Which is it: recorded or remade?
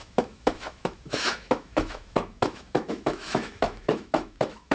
remade